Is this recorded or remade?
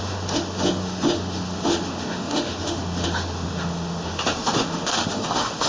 remade